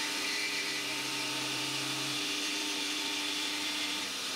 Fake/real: fake